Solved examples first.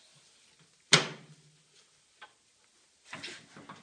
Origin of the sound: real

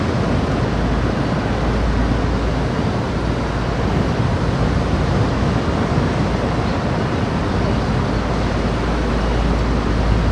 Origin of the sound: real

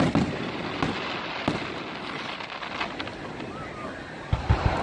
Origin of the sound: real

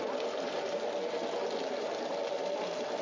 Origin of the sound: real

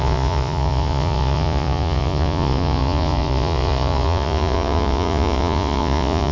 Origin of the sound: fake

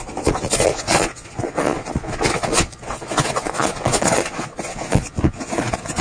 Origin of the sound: fake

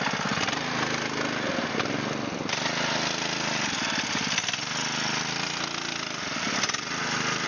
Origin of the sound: real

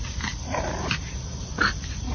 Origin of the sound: real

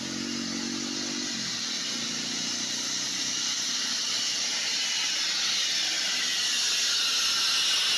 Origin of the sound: real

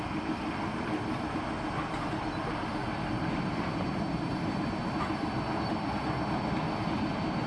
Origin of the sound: real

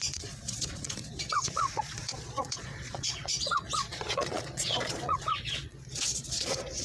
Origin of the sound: fake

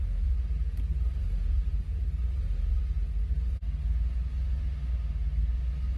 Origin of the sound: real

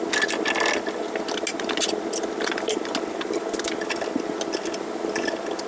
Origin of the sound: real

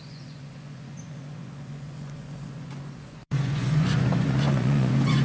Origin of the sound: fake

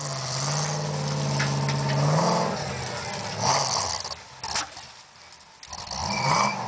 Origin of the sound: real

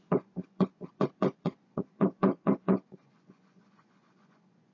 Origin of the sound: fake